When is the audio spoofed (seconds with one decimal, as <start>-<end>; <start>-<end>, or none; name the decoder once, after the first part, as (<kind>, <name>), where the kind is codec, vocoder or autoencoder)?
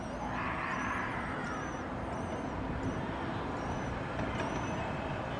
0.7-1.3 (vocoder, BigVGAN v2); 3.3-5.0